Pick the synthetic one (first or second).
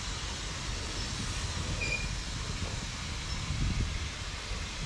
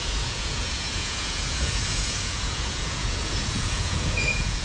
second